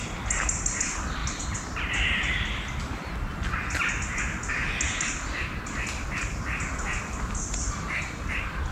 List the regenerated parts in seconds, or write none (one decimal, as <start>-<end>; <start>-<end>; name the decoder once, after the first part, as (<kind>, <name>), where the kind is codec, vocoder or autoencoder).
none

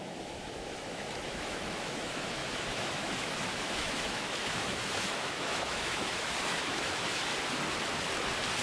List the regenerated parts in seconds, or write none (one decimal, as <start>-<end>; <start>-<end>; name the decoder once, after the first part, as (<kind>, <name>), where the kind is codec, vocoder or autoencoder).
0.0-7.3 (autoencoder, DAC-VAE)

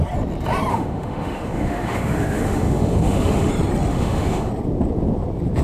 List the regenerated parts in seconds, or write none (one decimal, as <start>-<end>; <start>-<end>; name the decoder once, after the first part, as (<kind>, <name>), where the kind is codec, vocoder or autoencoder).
0.7-3.5 (autoencoder, DAC-VAE); 3.9-4.5

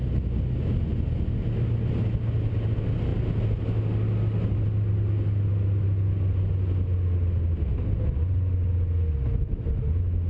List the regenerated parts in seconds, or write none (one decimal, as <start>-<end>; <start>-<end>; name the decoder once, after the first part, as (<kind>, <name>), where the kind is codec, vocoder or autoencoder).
none

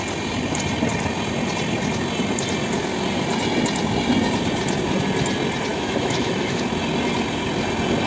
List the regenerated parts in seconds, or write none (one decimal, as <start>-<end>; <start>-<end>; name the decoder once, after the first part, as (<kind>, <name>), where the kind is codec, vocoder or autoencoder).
5.7-6.6 (autoencoder, DAC-VAE)

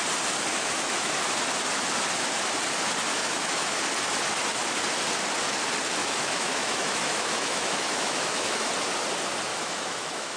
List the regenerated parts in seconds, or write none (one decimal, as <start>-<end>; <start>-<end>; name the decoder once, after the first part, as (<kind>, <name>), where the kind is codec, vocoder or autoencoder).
0.5-1.1 (autoencoder, DAC-VAE); 3.2-3.8; 6.0-8.7; 9.5-10.4

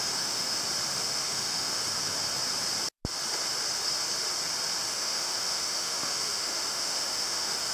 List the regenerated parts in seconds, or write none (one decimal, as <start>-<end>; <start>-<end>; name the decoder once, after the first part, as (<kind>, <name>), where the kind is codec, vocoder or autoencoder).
0.0-0.6 (autoencoder, DAC-VAE); 1.1-1.8; 4.9-7.7

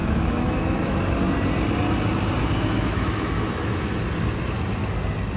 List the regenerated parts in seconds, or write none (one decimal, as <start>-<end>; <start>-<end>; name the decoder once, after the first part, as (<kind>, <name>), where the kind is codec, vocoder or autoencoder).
0.0-1.0 (autoencoder, DAC-VAE); 2.4-4.0